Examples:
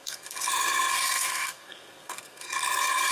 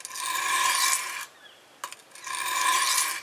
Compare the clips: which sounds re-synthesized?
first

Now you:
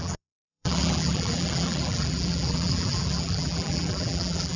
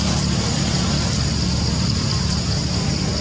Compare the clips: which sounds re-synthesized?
first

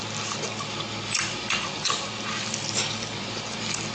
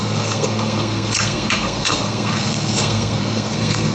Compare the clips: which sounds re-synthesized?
second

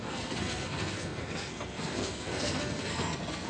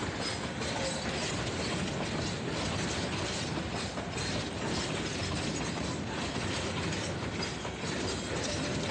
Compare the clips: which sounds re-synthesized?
first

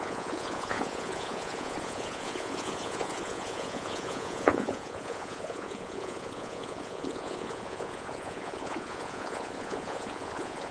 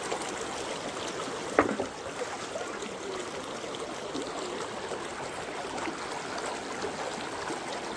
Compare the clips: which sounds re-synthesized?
first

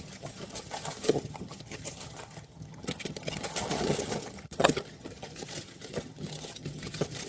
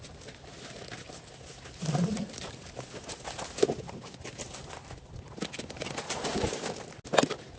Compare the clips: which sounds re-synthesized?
first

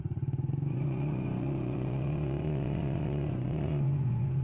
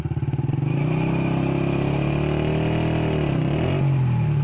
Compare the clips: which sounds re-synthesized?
first